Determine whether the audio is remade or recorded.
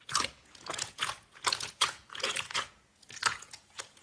remade